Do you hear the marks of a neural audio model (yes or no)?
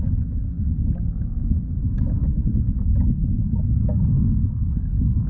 no